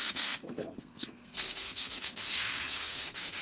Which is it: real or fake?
fake